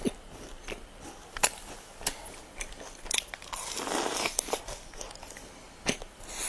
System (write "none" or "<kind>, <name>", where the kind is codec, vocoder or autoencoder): none